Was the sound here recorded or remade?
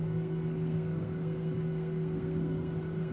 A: remade